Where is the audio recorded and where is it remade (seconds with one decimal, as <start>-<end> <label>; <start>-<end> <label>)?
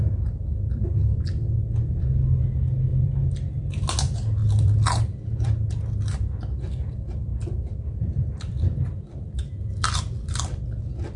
0.0-2.9 recorded; 2.9-3.6 remade; 3.6-4.4 recorded; 4.4-5.7 remade; 5.7-7.3 recorded; 7.3-10.6 remade; 10.6-11.2 recorded